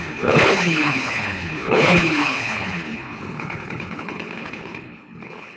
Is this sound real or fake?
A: fake